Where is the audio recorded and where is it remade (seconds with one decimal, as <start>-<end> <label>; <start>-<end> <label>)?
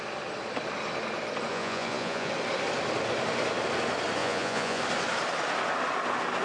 0.0-1.5 recorded; 1.5-2.3 remade; 2.3-4.2 recorded; 4.2-4.8 remade; 4.8-6.4 recorded